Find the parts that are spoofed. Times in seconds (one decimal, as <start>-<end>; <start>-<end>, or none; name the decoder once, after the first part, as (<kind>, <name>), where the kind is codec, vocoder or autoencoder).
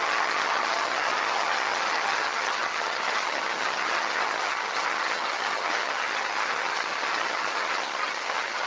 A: 0.0-8.7 (vocoder, HiFi-GAN)